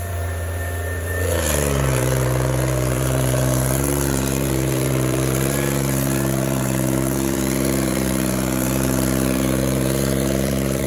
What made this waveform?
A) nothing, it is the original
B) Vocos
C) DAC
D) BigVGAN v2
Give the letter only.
D